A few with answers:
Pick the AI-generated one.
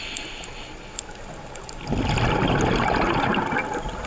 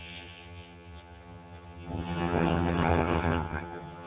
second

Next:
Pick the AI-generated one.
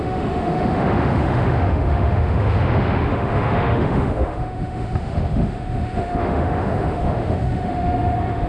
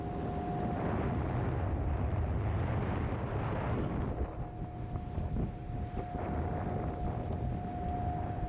first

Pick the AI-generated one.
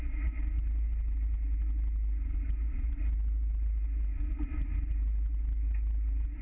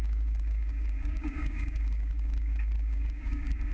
second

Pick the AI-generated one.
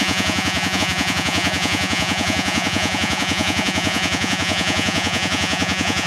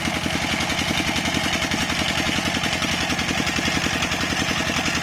first